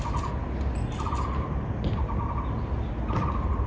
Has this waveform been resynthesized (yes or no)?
no